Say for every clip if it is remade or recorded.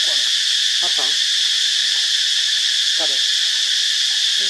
recorded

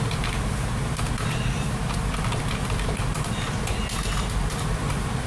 recorded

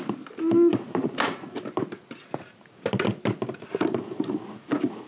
recorded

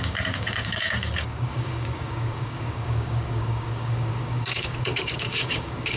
remade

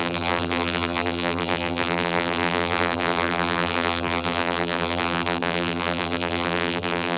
remade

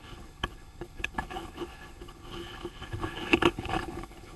remade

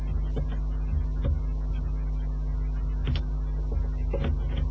recorded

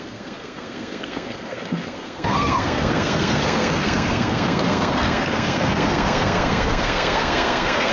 remade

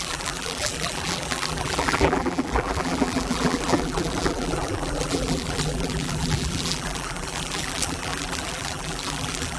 remade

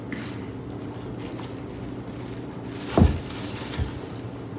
recorded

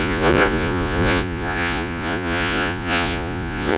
remade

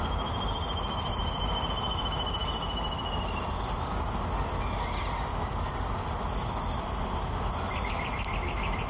recorded